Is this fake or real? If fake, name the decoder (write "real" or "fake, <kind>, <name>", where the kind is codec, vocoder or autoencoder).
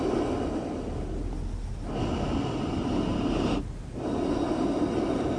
real